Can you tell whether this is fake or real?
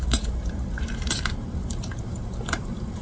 fake